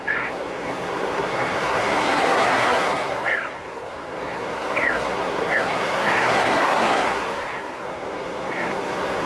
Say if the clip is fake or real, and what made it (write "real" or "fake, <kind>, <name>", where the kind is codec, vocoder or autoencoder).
fake, codec, SNAC